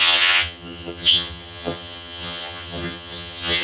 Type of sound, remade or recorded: remade